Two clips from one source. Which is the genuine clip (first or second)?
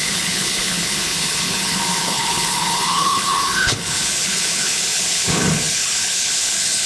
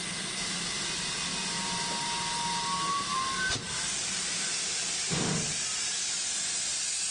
second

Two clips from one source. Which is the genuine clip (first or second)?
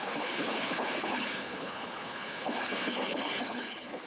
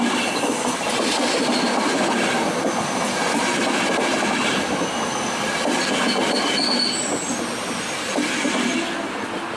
second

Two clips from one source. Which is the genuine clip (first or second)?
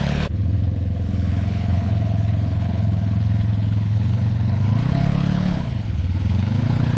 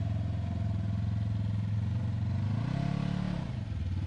second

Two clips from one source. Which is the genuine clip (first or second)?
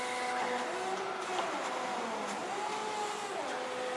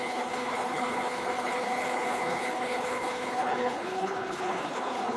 first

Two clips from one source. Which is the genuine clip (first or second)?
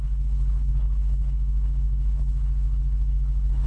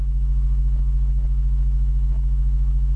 second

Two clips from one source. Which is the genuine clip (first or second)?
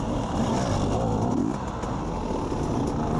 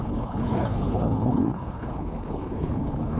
first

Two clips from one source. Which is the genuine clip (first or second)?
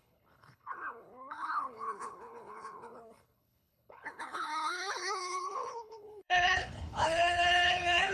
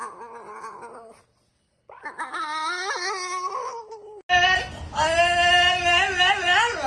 second